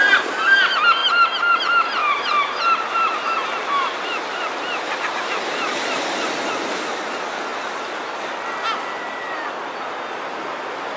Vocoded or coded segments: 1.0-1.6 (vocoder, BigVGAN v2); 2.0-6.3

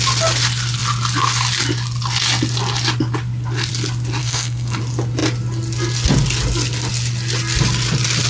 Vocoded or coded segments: 4.2-4.8 (codec, SNAC)

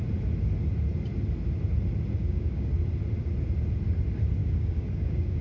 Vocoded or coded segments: 2.2-2.7 (codec, DAC); 4.4-5.4

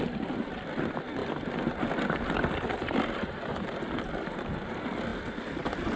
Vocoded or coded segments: none

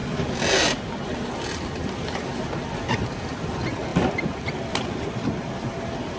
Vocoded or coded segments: none

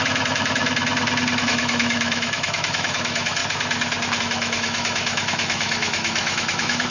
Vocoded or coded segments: 0.0-0.6 (autoencoder, DAC-VAE); 1.4-3.4; 4.2-6.9

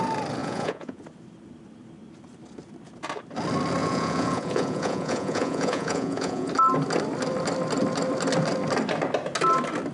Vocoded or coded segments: 0.4-1.0 (vocoder, Vocos); 3.8-6.5

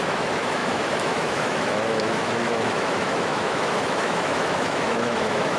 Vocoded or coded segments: 0.0-5.6 (autoencoder, DAC-VAE)